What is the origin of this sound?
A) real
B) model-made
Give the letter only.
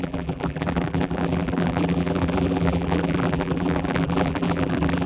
B